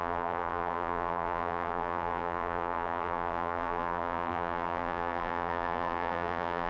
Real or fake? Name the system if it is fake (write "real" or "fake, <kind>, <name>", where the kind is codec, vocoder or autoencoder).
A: fake, vocoder, BigVGAN v2